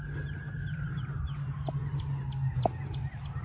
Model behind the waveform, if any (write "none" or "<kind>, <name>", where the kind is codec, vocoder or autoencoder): none